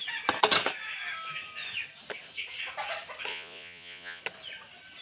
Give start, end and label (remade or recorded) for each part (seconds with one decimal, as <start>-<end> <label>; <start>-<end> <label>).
0.0-3.3 recorded; 3.3-4.2 remade; 4.2-5.0 recorded